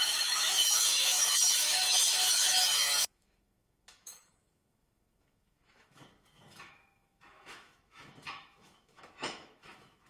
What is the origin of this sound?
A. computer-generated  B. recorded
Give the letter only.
A